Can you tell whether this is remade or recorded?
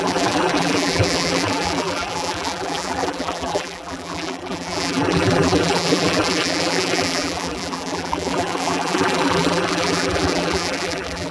remade